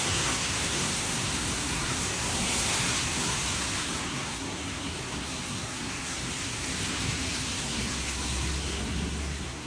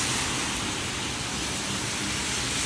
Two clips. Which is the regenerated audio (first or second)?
first